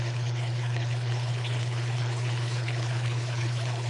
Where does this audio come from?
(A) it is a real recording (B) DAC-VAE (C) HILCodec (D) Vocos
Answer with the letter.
C